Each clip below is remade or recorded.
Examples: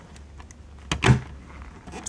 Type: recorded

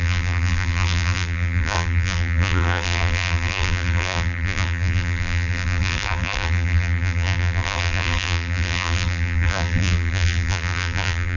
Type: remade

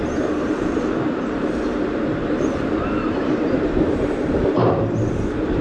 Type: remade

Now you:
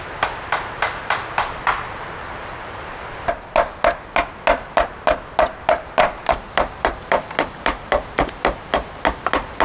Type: recorded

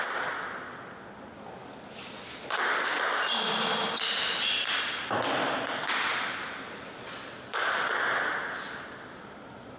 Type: recorded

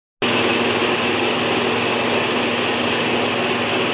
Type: recorded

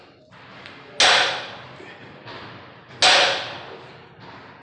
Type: recorded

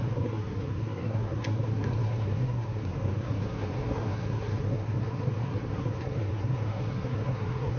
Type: remade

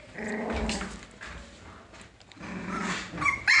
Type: recorded